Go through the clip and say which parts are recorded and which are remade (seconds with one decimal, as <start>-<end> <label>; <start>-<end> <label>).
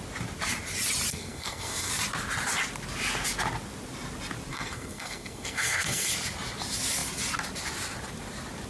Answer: 0.0-1.1 recorded; 1.1-1.9 remade; 1.9-4.5 recorded; 4.5-6.1 remade; 6.1-8.7 recorded